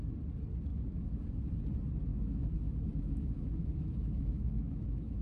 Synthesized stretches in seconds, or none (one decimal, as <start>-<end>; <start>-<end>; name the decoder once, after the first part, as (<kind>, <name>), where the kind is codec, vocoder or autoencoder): 0.7-1.2 (autoencoder, DAC-VAE); 2.1-5.2